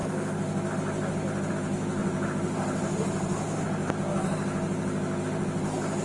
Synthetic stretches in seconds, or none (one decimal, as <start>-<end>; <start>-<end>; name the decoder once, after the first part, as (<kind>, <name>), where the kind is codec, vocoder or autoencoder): 2.0-3.9 (vocoder, BigVGAN v2)